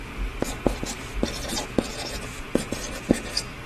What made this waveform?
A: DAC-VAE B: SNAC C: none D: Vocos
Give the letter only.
C